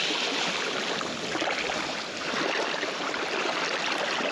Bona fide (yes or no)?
yes